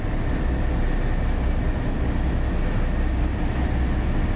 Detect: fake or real real